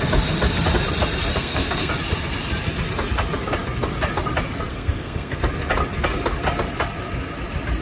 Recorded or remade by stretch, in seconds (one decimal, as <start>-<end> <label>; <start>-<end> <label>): 0.0-1.3 recorded; 1.3-1.9 remade; 1.9-4.7 recorded; 4.7-5.4 remade; 5.4-7.8 recorded